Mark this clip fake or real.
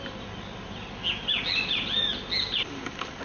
real